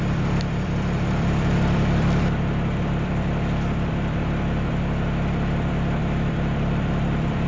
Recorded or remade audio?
remade